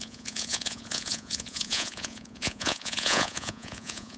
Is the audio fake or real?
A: fake